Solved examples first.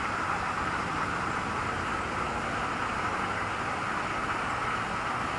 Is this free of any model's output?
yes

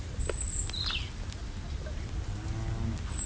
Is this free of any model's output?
yes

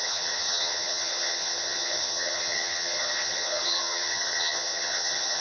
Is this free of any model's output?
no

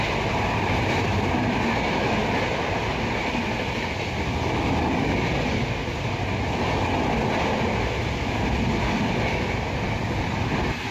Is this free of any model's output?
yes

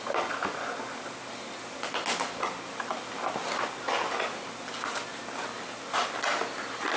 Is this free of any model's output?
yes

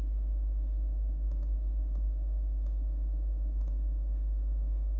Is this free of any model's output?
no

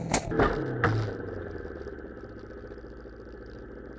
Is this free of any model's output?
yes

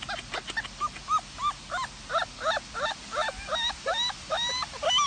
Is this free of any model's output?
yes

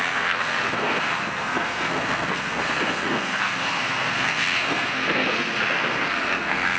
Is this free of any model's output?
no